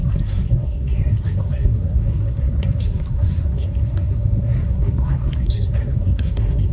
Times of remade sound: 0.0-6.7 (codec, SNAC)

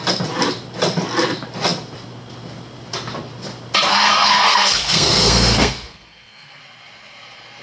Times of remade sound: 3.9-6.6 (codec, SNAC)

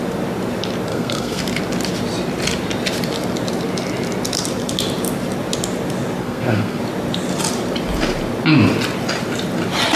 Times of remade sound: 0.9-1.4 (codec, SNAC); 6.2-6.8